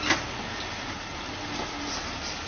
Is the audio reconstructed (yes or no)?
no